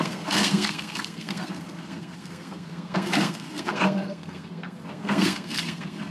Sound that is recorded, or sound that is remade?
remade